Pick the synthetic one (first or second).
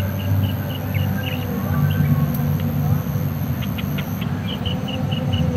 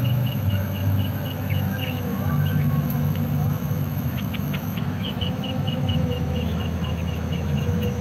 second